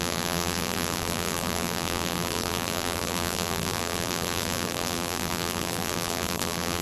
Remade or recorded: remade